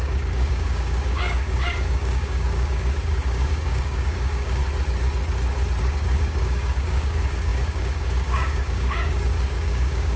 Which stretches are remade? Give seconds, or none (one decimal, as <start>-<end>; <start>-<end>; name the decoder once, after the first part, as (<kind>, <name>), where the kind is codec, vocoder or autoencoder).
0.0-4.6 (codec, DAC); 5.8-10.2